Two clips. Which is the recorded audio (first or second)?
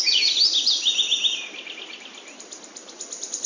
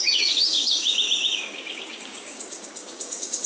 first